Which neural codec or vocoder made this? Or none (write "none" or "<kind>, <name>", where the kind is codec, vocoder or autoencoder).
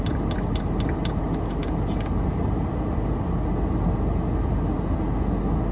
none